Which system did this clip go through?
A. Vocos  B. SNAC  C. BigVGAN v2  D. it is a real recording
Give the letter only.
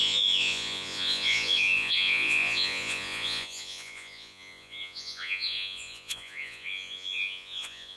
A